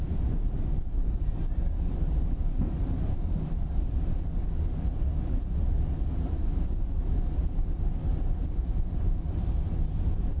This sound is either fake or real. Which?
real